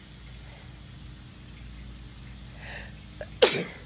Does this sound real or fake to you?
real